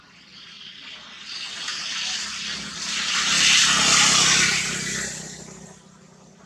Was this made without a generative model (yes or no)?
yes